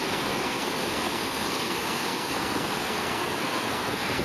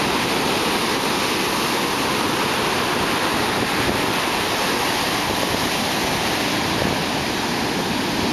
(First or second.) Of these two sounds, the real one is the second